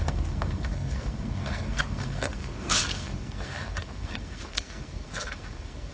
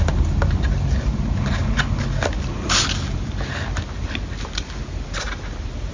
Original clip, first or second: second